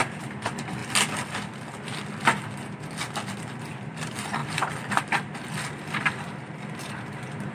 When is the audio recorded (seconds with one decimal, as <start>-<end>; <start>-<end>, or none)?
0.8-2.9